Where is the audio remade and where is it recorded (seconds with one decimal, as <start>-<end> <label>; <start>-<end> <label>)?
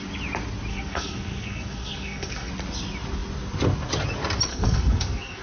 0.0-0.7 recorded; 0.7-2.5 remade; 2.5-4.5 recorded; 4.5-5.4 remade